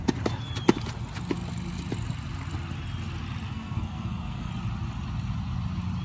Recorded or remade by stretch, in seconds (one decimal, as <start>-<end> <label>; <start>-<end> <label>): 0.0-3.5 recorded; 3.5-4.5 remade; 4.5-6.0 recorded